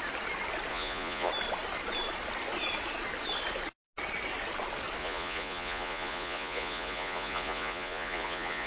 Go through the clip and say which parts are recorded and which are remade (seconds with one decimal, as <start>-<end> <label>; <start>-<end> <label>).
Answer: 0.0-0.7 recorded; 0.7-1.3 remade; 1.3-5.0 recorded; 5.0-8.7 remade